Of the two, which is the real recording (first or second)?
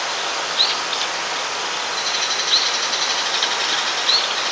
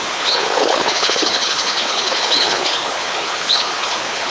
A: first